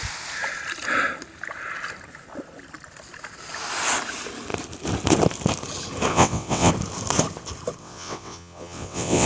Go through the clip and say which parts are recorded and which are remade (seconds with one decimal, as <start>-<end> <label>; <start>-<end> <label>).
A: 0.0-6.1 recorded; 6.1-6.7 remade; 6.7-7.8 recorded; 7.8-9.3 remade